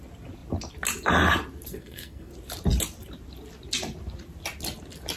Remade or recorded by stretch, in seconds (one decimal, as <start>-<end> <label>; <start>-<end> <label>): 0.0-1.7 recorded; 1.7-2.3 remade; 2.3-5.2 recorded